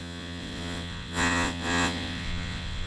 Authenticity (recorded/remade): remade